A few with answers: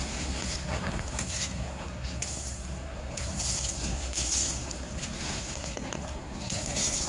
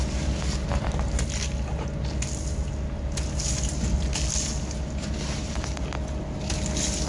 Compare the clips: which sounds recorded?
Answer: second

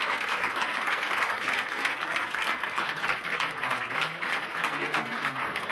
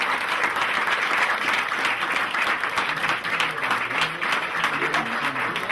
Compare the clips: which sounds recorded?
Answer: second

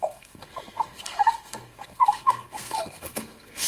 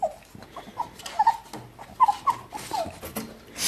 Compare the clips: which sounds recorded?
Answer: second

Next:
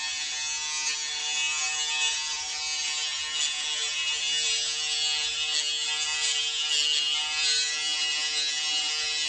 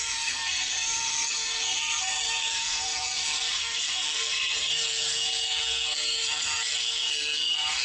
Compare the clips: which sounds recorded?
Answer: first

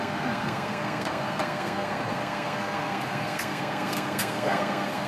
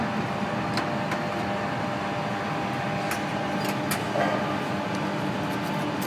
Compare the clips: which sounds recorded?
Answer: second